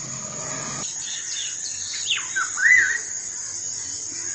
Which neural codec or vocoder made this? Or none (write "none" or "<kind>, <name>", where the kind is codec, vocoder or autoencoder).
none